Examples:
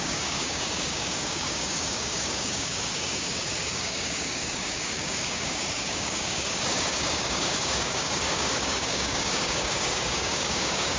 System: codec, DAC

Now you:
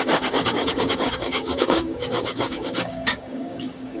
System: codec, DAC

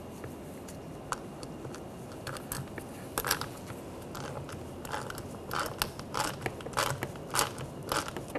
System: none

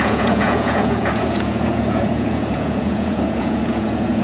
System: vocoder, Vocos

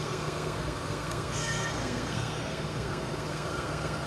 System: codec, SNAC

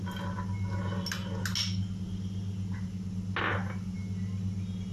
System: none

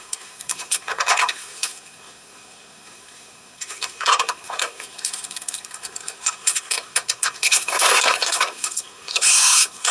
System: codec, SNAC